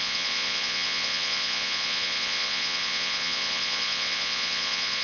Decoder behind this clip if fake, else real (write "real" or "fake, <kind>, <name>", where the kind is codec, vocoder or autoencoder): fake, vocoder, Vocos